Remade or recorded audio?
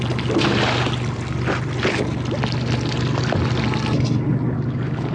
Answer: recorded